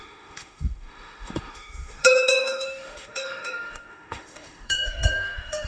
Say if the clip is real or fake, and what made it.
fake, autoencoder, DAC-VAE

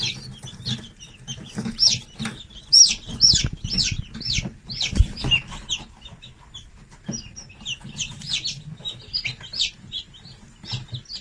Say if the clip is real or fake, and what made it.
real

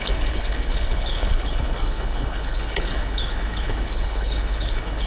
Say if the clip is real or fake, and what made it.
fake, codec, HILCodec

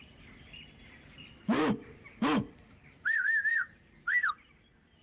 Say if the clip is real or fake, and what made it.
real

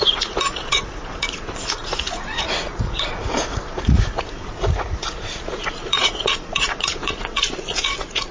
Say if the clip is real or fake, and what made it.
fake, vocoder, Vocos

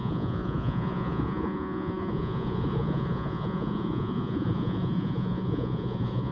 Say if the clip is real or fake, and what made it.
fake, vocoder, Vocos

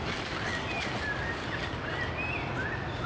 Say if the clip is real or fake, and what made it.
real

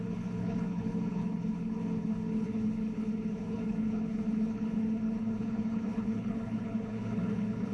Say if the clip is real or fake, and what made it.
fake, codec, HILCodec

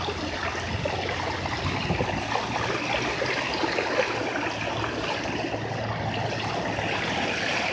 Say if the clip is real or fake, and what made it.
real